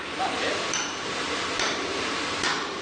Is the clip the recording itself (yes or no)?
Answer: no